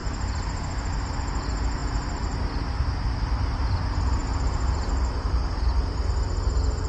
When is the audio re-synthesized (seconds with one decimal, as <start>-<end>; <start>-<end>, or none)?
1.0-6.9